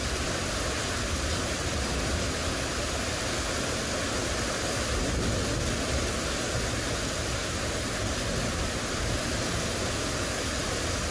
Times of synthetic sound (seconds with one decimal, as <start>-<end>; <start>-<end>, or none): none